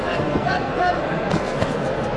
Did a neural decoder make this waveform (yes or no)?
yes